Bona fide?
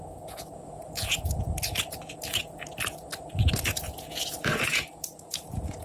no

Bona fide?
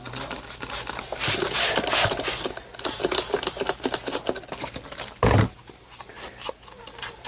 yes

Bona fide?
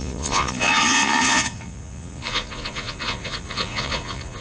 no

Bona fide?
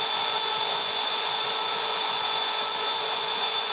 no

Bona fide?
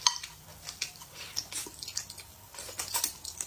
yes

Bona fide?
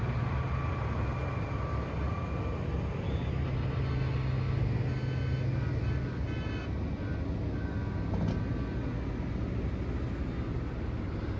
yes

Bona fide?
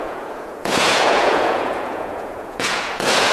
no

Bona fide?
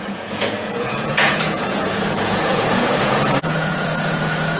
no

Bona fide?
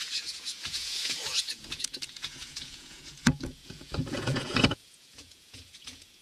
no